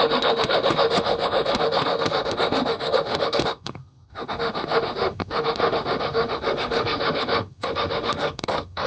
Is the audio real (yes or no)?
no